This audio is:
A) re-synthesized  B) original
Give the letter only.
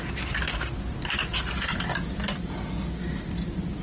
B